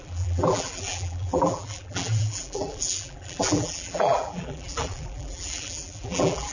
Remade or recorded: remade